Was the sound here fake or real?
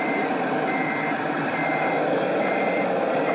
fake